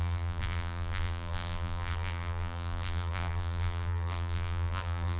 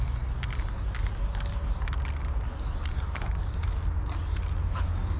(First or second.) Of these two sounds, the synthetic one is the first